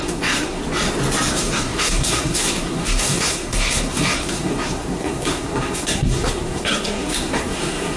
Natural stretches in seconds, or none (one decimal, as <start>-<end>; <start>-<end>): 0.6-1.3